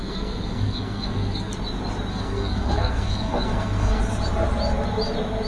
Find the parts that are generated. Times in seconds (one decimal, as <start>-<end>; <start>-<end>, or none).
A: 0.0-1.5; 2.1-4.0